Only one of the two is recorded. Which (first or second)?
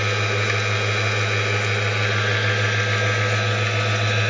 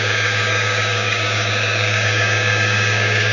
first